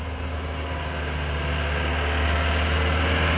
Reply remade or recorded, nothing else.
recorded